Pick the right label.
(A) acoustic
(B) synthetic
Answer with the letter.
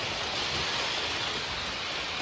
A